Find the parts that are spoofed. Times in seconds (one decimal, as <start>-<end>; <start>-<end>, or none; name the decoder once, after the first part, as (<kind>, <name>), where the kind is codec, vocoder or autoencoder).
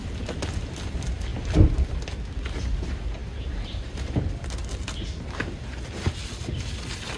none